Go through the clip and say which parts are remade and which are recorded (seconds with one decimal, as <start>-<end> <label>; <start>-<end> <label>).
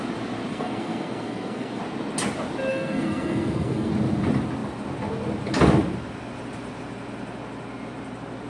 0.0-0.5 recorded; 0.5-1.8 remade; 1.8-2.7 recorded; 2.7-3.9 remade; 3.9-8.5 recorded